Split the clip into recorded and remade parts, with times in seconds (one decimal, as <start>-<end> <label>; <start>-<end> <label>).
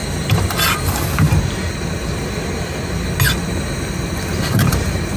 0.0-5.2 recorded